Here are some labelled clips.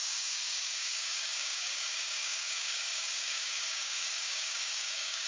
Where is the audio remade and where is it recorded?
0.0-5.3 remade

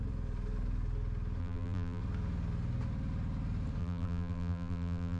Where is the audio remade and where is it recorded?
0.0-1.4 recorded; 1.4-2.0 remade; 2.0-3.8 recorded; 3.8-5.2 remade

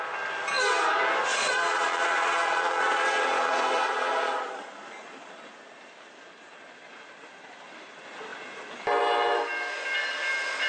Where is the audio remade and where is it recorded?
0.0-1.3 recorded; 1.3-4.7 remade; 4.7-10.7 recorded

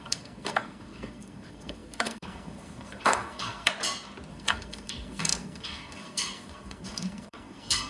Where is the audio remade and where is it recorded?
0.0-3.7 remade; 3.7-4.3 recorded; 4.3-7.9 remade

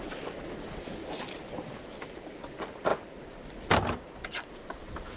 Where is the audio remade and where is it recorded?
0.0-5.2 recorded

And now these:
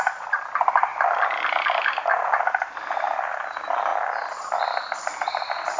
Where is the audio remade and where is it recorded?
0.0-5.8 recorded